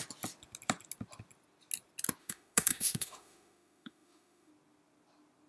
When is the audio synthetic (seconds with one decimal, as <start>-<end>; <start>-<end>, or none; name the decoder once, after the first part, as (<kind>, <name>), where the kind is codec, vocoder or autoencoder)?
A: 2.2-4.5 (autoencoder, DAC-VAE)